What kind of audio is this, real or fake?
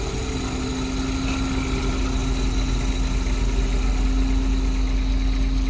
real